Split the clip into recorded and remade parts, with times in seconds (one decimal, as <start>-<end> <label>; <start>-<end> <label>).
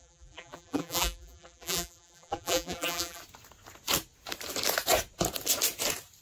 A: 0.0-3.2 remade; 3.2-6.2 recorded